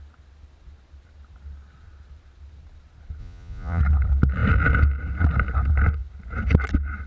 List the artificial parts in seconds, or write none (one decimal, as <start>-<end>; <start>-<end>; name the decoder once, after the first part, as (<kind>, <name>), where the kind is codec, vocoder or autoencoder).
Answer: 3.2-3.8 (vocoder, Vocos)